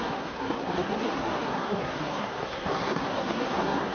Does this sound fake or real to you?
fake